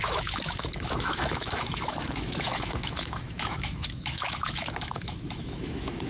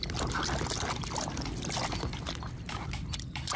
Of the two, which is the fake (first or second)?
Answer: first